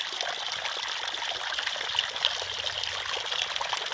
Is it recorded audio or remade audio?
recorded